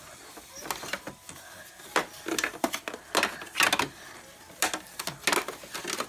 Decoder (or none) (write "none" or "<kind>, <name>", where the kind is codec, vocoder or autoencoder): none